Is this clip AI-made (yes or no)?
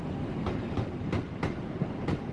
no